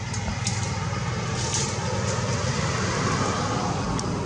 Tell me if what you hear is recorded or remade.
recorded